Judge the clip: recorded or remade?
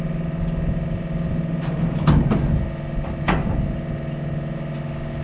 recorded